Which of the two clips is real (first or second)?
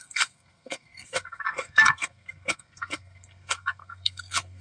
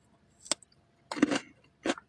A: second